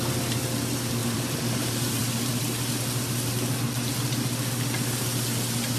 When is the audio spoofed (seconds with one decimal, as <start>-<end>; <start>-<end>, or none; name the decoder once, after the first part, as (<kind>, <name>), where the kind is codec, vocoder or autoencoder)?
1.0-2.4 (vocoder, BigVGAN v2)